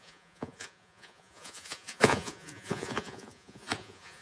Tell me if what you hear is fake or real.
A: fake